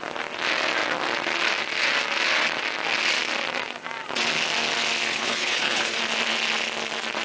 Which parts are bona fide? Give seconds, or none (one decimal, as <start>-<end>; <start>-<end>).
0.0-5.1; 6.0-7.2